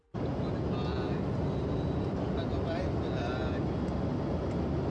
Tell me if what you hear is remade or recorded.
recorded